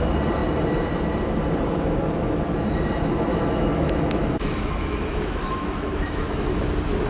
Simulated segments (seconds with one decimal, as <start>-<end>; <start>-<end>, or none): 3.3-6.6